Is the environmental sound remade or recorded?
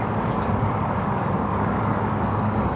remade